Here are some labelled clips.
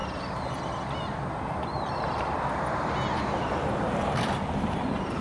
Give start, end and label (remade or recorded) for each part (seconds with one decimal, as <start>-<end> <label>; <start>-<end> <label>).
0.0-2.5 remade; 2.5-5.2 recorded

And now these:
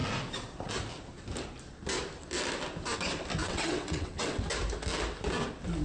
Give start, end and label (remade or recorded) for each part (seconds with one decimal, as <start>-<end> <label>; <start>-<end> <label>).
0.0-3.4 recorded; 3.4-4.4 remade; 4.4-5.8 recorded

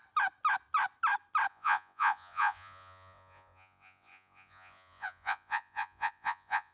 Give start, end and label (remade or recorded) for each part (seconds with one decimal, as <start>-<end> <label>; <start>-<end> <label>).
0.0-1.5 recorded; 1.5-6.7 remade

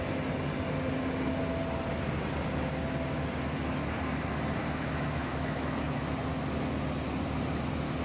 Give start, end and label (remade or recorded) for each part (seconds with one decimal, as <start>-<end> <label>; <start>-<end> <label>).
0.0-4.6 recorded; 4.6-6.0 remade; 6.0-8.0 recorded